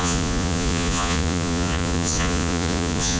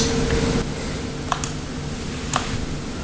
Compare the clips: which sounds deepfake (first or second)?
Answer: first